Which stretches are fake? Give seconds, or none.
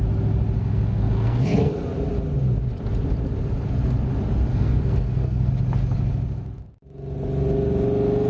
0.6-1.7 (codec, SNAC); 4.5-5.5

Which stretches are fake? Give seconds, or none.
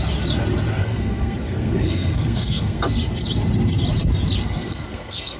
0.8-2.8 (codec, SNAC); 4.4-5.4